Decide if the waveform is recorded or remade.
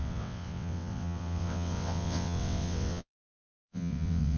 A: remade